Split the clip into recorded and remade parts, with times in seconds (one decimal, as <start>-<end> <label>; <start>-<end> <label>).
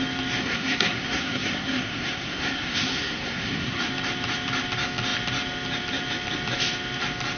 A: 0.0-0.4 recorded; 0.4-3.9 remade; 3.9-7.4 recorded